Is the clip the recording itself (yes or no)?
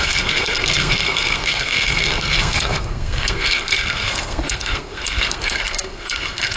no